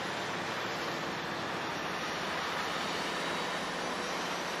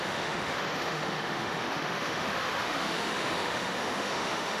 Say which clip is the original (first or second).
first